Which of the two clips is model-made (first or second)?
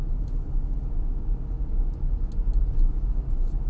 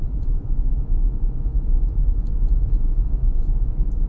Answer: second